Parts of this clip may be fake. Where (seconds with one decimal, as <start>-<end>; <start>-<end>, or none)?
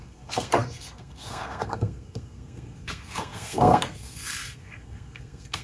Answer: 0.0-5.6